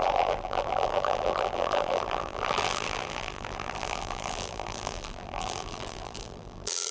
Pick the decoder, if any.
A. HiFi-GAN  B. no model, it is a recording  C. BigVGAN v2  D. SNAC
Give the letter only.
C